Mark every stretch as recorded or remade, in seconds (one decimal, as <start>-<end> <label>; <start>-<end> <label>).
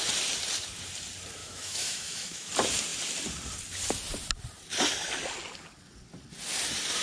0.0-1.4 recorded; 1.4-2.5 remade; 2.5-7.0 recorded